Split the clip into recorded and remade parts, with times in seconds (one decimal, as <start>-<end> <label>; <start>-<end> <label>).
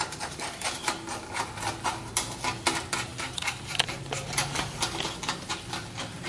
0.0-6.3 recorded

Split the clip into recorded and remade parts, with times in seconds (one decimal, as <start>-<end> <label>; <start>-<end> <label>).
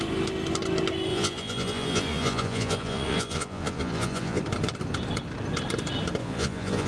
0.0-1.1 recorded; 1.1-4.4 remade; 4.4-6.2 recorded; 6.2-6.9 remade